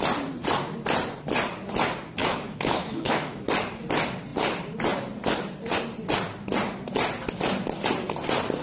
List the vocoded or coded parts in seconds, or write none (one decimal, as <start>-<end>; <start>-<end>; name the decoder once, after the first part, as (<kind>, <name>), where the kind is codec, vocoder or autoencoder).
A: 2.2-3.4 (autoencoder, DAC-VAE)